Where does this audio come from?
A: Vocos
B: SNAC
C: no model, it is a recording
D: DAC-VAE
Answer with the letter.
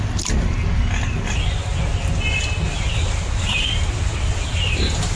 C